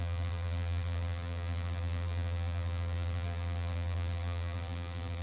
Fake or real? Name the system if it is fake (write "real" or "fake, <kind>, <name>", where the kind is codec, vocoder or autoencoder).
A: fake, vocoder, BigVGAN v2